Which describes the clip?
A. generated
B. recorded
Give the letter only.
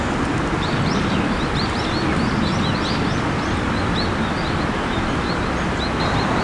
B